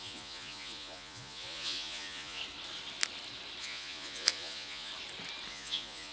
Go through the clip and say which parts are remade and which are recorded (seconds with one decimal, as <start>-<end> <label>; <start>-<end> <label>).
0.0-2.4 remade; 2.4-3.6 recorded; 3.6-4.9 remade; 4.9-5.5 recorded; 5.5-6.1 remade